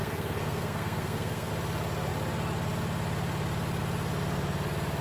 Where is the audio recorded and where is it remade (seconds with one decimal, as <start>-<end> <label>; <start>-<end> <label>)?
0.0-1.5 remade; 1.5-5.0 recorded